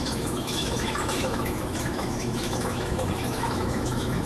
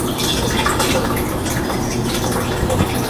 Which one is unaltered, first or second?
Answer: second